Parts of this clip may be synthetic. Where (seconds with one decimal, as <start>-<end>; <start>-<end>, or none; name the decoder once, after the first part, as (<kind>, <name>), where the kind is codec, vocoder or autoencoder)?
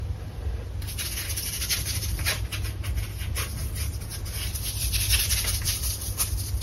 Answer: 4.1-6.0 (vocoder, BigVGAN v2)